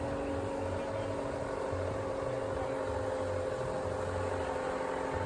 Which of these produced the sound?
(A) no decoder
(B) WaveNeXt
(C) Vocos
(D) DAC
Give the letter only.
A